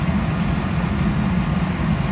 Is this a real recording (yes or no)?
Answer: yes